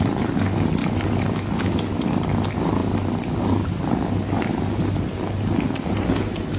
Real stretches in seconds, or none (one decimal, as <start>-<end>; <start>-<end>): 0.0-6.6

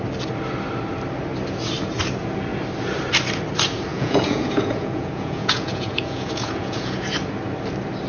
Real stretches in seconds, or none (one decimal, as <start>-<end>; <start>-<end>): 0.0-3.9; 7.0-8.1

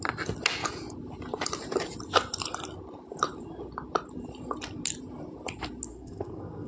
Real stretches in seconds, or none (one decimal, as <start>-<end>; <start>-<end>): 0.0-5.9

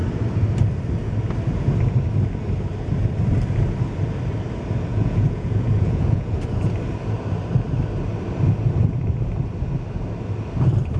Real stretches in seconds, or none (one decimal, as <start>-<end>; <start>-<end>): 0.0-4.9; 6.4-11.0

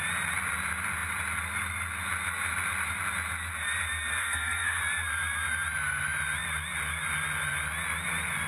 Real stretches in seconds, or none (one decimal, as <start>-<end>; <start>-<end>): 0.0-4.2; 4.8-8.5

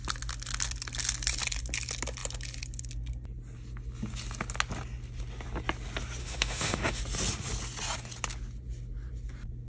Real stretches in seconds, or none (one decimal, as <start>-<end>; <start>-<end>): 0.0-6.2; 7.0-9.7

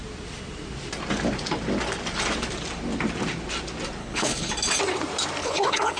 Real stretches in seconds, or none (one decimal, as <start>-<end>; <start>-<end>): 0.0-4.0; 4.5-5.4